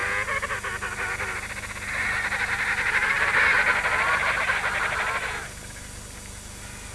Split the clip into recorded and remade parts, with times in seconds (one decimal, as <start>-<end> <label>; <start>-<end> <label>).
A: 0.0-6.9 recorded